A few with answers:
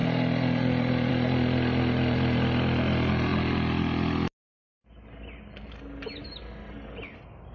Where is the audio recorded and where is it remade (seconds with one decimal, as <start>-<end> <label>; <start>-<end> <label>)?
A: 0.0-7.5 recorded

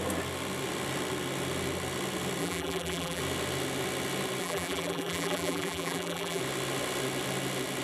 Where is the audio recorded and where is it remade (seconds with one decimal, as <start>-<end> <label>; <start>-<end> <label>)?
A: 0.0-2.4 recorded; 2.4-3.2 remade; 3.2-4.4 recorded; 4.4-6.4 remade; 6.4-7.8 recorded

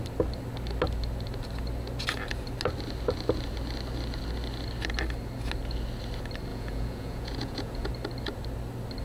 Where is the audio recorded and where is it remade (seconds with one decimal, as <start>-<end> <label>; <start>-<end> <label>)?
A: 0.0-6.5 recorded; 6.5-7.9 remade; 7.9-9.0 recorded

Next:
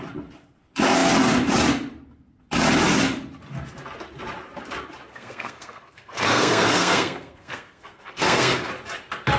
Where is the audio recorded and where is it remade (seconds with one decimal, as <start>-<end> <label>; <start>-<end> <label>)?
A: 0.0-5.1 recorded; 5.1-8.7 remade; 8.7-9.4 recorded

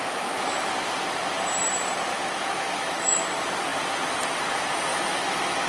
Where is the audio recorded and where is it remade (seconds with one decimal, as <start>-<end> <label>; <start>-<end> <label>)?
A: 0.0-0.7 remade; 0.7-2.1 recorded; 2.1-3.2 remade; 3.2-4.9 recorded; 4.9-5.7 remade

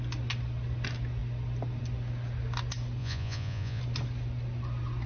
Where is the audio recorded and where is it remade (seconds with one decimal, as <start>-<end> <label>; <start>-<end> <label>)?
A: 0.0-3.0 recorded; 3.0-3.8 remade; 3.8-5.1 recorded